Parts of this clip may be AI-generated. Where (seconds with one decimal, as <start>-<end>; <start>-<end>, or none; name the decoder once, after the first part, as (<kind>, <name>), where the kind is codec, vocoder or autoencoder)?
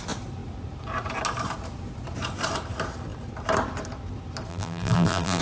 4.5-5.4 (vocoder, BigVGAN v2)